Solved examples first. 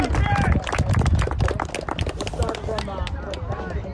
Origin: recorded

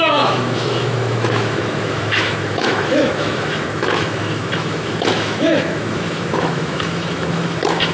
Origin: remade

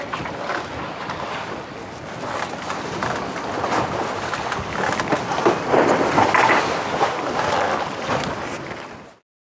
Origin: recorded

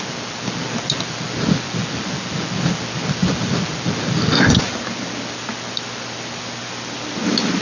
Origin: recorded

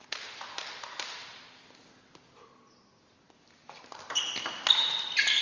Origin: recorded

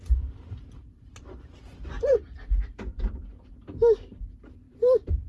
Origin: remade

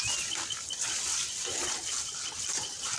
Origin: recorded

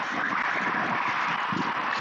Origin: recorded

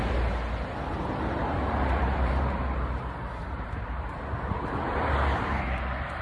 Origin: remade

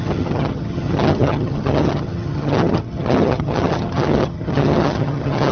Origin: remade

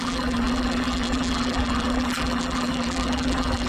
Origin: remade